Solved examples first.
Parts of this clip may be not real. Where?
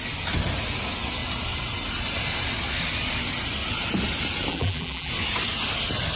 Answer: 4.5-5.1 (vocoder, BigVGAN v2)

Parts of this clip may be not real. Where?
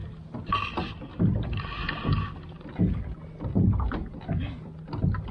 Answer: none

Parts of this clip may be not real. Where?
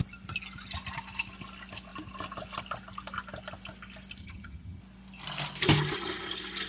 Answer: 4.2-4.8 (vocoder, HiFi-GAN)